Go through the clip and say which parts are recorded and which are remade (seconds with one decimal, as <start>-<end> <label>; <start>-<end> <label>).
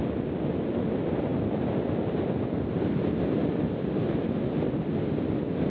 0.0-5.7 recorded